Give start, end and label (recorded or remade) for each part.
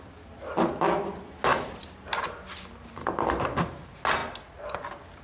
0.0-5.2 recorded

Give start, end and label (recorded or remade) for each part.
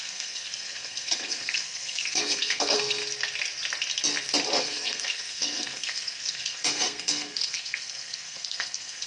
0.0-3.0 remade; 3.0-4.6 recorded; 4.6-9.1 remade